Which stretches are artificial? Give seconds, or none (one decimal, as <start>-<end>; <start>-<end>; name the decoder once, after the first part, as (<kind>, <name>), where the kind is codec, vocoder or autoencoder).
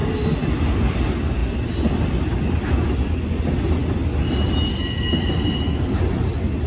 none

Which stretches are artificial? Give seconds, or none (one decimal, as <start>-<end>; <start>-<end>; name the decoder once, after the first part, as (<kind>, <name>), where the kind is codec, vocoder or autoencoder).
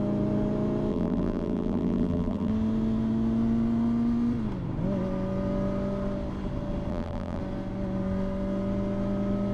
0.9-2.5 (vocoder, BigVGAN v2); 6.9-7.4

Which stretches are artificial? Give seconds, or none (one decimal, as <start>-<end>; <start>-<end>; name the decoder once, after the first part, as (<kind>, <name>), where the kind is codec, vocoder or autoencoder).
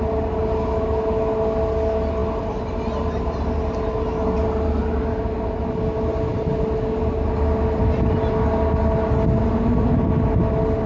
none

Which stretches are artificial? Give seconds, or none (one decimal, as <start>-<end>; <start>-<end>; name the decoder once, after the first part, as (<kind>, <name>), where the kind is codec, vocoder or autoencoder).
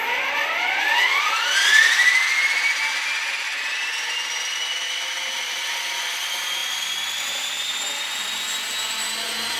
none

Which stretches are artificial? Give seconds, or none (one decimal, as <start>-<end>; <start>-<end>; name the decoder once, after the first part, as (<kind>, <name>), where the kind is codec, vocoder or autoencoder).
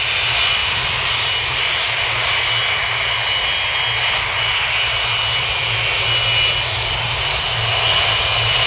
0.6-2.2 (vocoder, BigVGAN v2); 6.8-7.3